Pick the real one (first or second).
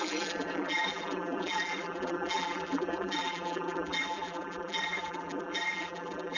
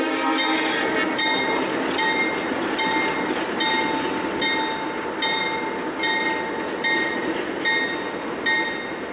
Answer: second